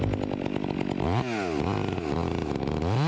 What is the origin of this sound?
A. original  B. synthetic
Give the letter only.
A